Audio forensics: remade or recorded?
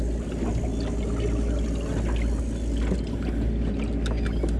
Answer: recorded